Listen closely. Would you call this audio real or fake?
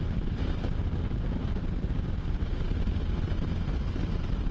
real